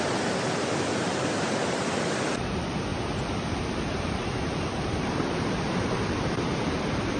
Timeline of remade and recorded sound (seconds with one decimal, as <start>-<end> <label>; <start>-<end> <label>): 0.0-2.9 remade; 2.9-3.5 recorded; 3.5-7.2 remade